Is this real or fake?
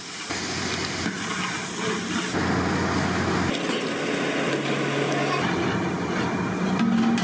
real